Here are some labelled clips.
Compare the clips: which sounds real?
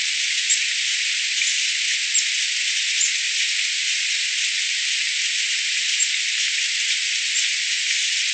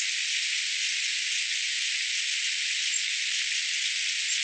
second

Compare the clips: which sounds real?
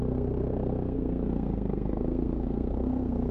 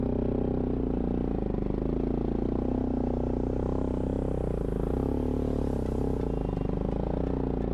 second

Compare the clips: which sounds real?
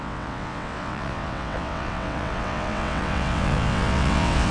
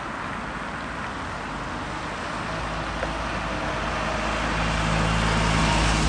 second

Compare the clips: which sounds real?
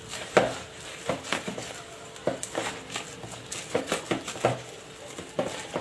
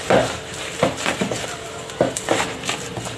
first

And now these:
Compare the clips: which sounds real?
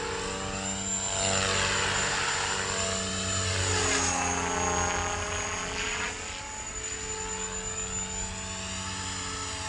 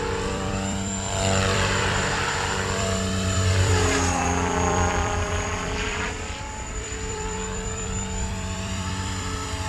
first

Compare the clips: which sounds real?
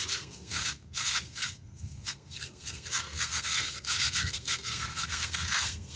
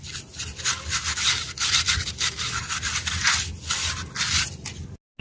second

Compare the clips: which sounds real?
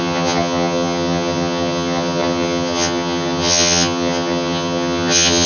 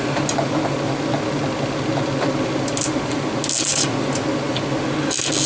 second